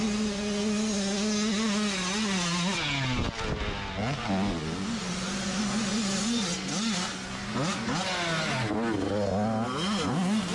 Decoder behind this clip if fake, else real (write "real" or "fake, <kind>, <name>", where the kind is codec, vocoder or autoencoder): real